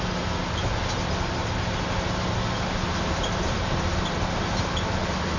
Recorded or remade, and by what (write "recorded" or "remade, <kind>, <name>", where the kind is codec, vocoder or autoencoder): recorded